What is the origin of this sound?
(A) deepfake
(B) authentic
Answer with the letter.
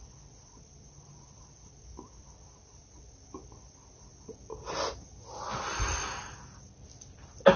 B